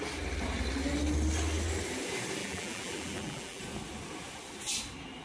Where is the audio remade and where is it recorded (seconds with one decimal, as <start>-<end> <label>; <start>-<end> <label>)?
0.0-2.4 recorded; 2.4-3.6 remade; 3.6-5.2 recorded